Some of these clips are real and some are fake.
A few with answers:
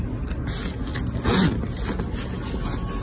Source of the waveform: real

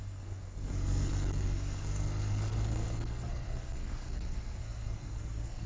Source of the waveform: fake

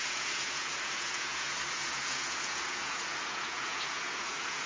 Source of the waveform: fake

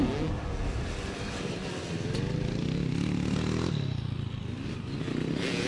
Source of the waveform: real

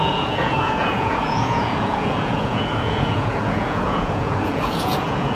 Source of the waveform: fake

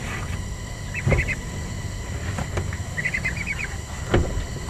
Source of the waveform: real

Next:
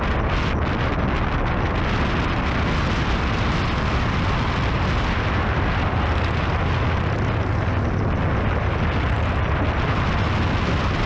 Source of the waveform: real